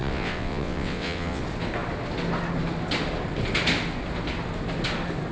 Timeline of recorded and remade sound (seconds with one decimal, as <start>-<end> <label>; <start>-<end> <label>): 0.0-1.4 remade; 1.4-5.3 recorded